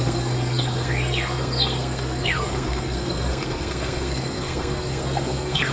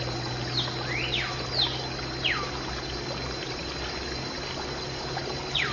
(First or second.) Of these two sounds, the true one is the second